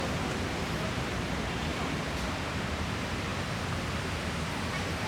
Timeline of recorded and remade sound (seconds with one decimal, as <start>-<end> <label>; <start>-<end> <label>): 0.0-1.7 remade; 1.7-2.4 recorded; 2.4-3.3 remade; 3.3-4.5 recorded; 4.5-5.1 remade